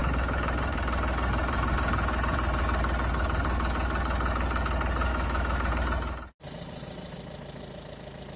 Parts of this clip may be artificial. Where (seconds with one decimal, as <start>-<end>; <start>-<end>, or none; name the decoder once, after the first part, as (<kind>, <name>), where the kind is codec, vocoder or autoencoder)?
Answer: 5.1-5.7 (autoencoder, DAC-VAE)